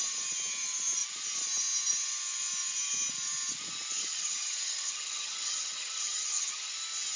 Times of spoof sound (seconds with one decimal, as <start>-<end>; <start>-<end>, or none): 4.0-6.7